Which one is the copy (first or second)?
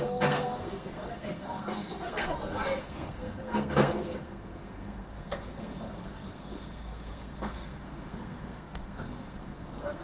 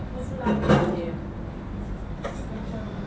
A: first